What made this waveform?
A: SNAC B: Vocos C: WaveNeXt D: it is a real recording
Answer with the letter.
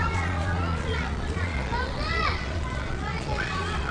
B